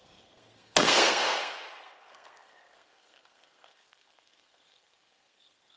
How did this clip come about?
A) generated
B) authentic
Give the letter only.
A